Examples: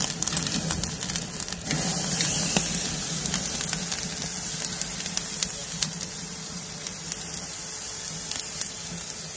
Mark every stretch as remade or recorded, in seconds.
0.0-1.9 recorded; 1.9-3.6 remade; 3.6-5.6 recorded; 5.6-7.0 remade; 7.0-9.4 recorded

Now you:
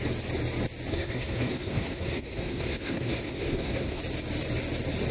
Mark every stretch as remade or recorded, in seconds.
0.0-0.9 recorded; 0.9-4.0 remade; 4.0-5.1 recorded

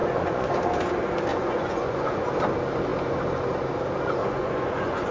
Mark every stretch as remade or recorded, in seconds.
0.0-0.5 remade; 0.5-1.3 recorded; 1.3-2.3 remade; 2.3-4.2 recorded; 4.2-5.1 remade

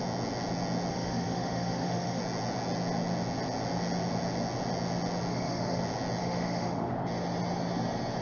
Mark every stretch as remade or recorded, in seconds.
0.0-0.9 recorded; 0.9-2.2 remade; 2.2-5.3 recorded; 5.3-5.8 remade; 5.8-6.2 recorded; 6.2-6.9 remade; 6.9-8.2 recorded

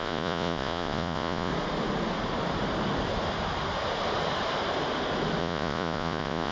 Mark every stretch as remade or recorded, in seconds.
0.0-1.5 remade; 1.5-5.4 recorded; 5.4-6.5 remade